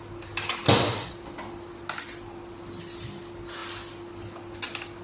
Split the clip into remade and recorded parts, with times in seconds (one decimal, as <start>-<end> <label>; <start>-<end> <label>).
0.0-5.0 recorded